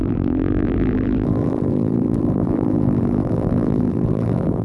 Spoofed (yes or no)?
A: yes